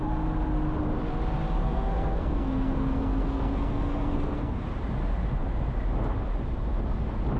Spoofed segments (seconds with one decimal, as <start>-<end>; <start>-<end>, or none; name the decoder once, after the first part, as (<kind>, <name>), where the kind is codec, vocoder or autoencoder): 1.6-4.6 (codec, SNAC)